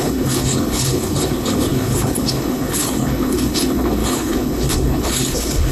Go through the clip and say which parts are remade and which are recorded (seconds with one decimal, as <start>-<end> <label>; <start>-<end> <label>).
0.0-5.7 remade